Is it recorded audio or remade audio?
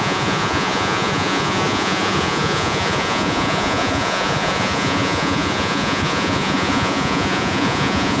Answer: remade